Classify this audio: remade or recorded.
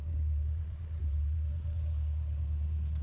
remade